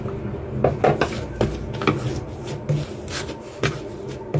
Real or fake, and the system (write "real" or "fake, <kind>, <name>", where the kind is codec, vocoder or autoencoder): real